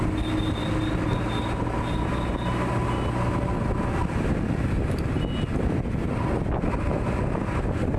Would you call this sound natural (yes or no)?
yes